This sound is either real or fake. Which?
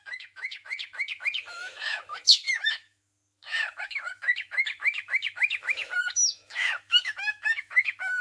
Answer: fake